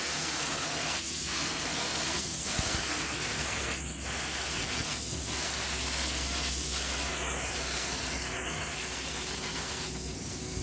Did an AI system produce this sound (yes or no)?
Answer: yes